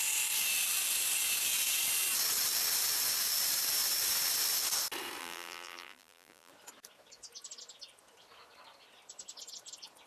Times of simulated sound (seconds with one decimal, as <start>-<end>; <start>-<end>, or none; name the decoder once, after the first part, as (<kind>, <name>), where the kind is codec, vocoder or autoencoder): 5.2-6.5 (vocoder, BigVGAN v2)